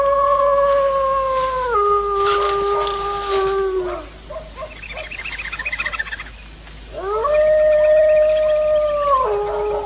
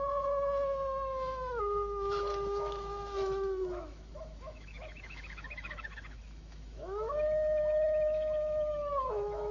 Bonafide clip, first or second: first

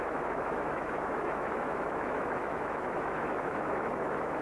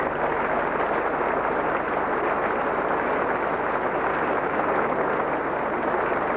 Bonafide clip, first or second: second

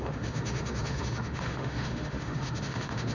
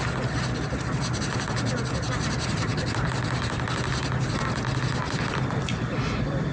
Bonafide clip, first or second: second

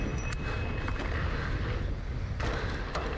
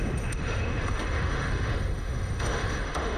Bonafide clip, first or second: first